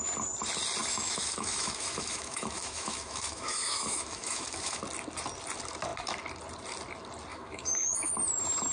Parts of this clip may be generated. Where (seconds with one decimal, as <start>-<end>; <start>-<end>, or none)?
0.8-4.8; 7.3-8.1